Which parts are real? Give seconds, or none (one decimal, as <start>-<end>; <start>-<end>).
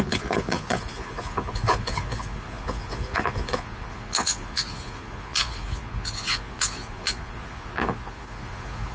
none